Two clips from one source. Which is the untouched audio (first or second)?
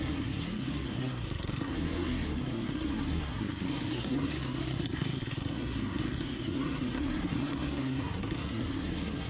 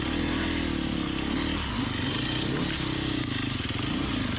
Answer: second